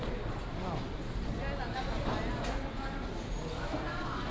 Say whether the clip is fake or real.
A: real